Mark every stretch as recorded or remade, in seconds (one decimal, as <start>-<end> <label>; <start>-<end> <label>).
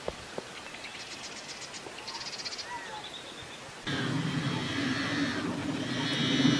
0.0-6.6 recorded